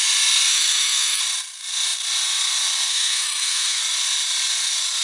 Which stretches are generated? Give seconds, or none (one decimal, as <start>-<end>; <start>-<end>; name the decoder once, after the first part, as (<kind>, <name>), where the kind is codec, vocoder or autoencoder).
0.5-1.2 (autoencoder, DAC-VAE); 2.9-3.8

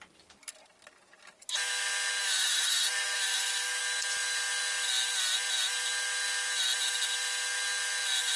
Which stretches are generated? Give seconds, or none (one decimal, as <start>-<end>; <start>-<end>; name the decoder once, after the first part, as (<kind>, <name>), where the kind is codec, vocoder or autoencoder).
2.2-3.8 (autoencoder, DAC-VAE)

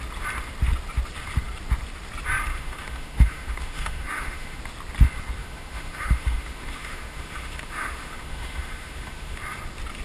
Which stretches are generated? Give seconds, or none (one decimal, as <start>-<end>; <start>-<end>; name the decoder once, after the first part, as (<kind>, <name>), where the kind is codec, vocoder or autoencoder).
2.5-4.6 (autoencoder, DAC-VAE); 5.4-9.4

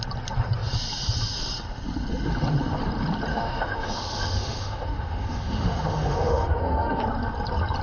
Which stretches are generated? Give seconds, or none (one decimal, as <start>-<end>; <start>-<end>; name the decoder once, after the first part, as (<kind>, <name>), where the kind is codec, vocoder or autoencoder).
3.3-7.0 (autoencoder, DAC-VAE)

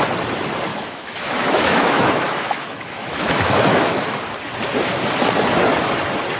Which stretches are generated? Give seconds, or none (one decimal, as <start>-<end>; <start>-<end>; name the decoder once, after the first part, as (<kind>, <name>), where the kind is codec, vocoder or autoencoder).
0.7-4.2 (autoencoder, DAC-VAE)